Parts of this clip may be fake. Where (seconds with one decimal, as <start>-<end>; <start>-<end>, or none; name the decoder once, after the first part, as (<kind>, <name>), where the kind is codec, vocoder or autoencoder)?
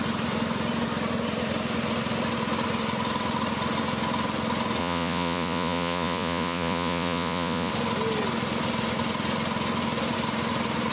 4.8-7.7 (vocoder, Vocos)